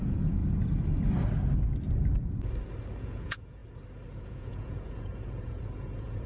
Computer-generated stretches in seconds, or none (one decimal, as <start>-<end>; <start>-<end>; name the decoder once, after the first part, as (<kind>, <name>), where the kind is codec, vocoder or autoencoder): 0.0-0.4 (vocoder, Vocos); 3.0-3.6; 4.2-6.3